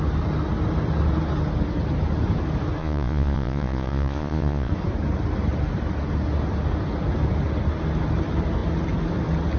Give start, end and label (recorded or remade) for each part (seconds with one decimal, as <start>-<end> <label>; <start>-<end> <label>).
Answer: 0.0-2.8 recorded; 2.8-4.7 remade; 4.7-9.6 recorded